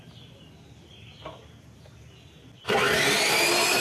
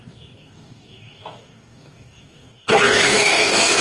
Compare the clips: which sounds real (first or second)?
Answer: first